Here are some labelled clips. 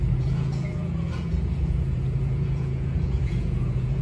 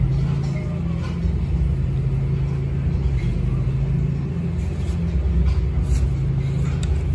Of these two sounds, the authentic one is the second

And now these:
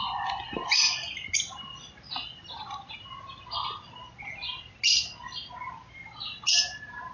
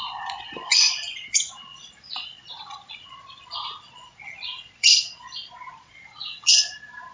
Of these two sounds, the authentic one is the first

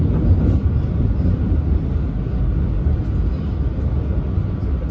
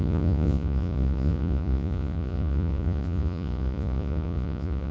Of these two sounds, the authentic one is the first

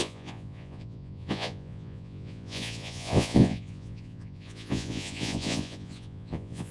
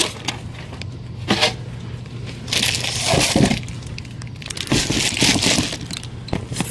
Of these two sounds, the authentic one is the second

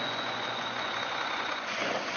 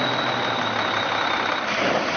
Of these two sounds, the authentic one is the second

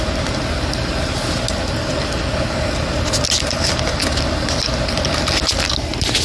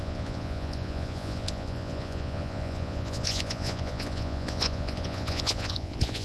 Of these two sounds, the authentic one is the first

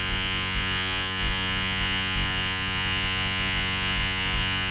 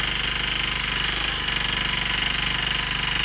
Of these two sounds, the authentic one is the second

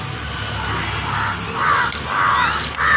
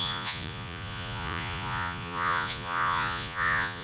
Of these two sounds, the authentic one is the first